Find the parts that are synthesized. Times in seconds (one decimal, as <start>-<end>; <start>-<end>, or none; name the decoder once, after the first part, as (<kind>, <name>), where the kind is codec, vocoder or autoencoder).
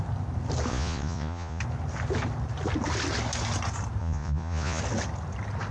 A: 0.7-1.6 (vocoder, Vocos); 4.0-4.8